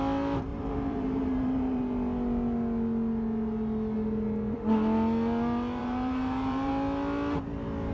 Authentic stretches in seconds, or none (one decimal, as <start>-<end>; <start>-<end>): 0.0-0.5; 1.8-5.8; 6.7-7.9